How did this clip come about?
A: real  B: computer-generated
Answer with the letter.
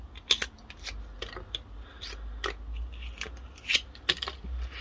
A